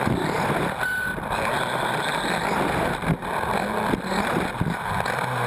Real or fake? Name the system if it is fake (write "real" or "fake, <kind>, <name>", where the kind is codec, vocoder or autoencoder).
real